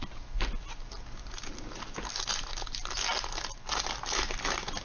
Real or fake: real